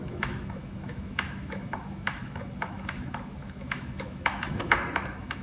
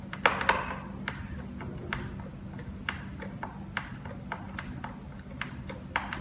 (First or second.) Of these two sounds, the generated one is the first